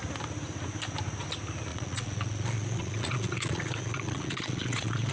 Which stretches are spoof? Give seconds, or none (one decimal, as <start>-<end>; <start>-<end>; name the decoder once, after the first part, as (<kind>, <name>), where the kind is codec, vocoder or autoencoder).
1.7-5.1 (vocoder, Vocos)